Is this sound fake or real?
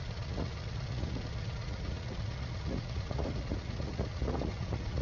fake